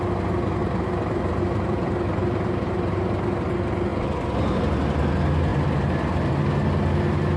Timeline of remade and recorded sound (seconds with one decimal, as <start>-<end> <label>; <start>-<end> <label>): 0.0-0.6 recorded; 0.6-2.7 remade; 2.7-3.9 recorded; 3.9-4.6 remade; 4.6-7.4 recorded